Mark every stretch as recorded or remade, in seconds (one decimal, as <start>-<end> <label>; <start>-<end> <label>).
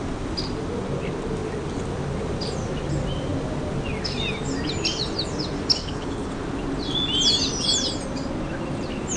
0.0-5.8 recorded; 5.8-6.3 remade; 6.3-9.2 recorded